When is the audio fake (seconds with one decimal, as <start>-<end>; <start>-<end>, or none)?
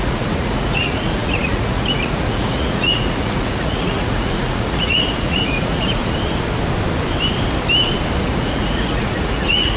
0.0-6.0; 8.2-9.8